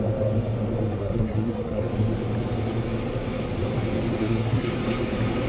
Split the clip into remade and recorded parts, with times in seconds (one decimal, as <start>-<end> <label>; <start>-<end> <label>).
0.0-1.0 recorded; 1.0-1.8 remade; 1.8-4.2 recorded; 4.2-4.7 remade; 4.7-5.5 recorded